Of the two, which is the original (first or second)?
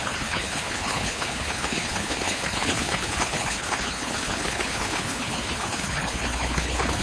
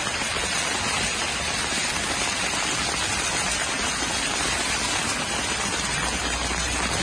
second